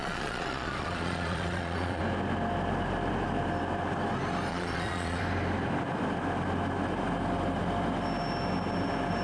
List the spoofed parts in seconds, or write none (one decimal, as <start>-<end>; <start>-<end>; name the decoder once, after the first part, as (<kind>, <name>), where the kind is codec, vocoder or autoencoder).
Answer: 0.0-2.0 (vocoder, Vocos); 4.5-5.2